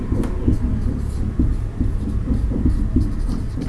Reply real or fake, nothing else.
real